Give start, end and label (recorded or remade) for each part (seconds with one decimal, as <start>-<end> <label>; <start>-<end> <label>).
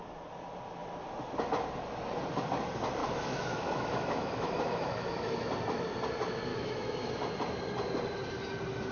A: 0.0-3.0 recorded; 3.0-5.5 remade; 5.5-6.5 recorded; 6.5-7.1 remade; 7.1-8.9 recorded